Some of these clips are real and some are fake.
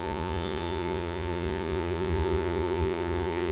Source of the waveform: fake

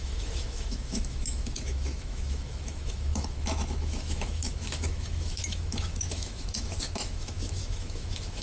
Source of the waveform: fake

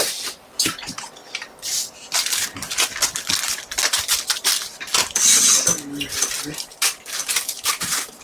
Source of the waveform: fake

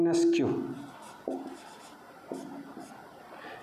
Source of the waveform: real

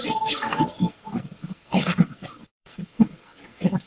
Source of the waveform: fake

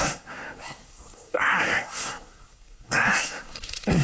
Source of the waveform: fake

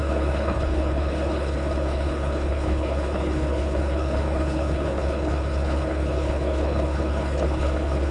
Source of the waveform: fake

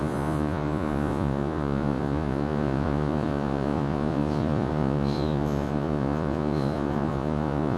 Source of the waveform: fake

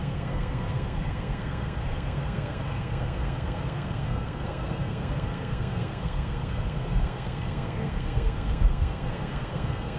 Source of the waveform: fake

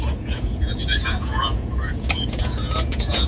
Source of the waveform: fake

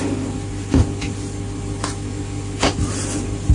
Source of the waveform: real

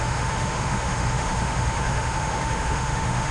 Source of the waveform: fake